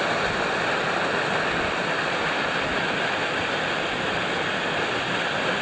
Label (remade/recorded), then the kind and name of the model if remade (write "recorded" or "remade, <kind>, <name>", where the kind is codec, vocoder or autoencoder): recorded